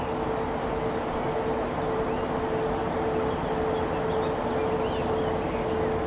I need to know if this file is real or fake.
real